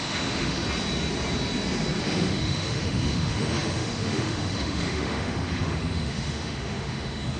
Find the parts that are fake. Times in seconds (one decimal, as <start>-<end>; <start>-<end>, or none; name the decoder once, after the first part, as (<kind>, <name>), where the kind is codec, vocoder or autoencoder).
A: 0.0-0.6 (autoencoder, DAC-VAE); 2.0-7.4